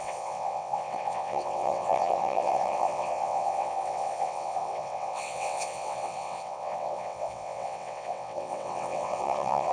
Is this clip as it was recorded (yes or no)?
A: no